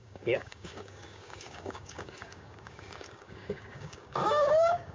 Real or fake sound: fake